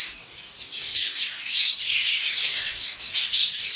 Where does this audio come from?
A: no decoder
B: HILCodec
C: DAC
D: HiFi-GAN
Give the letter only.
C